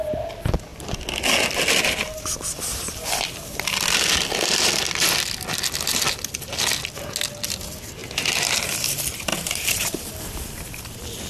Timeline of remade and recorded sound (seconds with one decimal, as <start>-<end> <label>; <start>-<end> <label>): 0.0-8.0 recorded; 8.0-8.7 remade; 8.7-9.3 recorded; 9.3-10.1 remade; 10.1-11.3 recorded